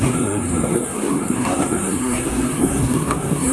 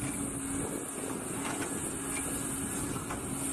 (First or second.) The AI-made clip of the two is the first